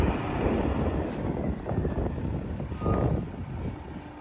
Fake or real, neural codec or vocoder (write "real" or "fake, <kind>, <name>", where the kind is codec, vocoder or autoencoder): real